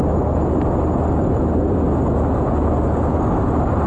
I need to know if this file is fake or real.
real